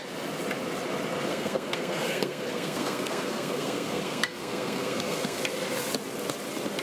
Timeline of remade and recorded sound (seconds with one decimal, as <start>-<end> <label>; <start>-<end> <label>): 0.0-1.3 recorded; 1.3-5.4 remade; 5.4-6.8 recorded